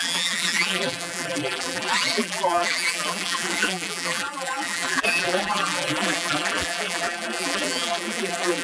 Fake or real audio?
fake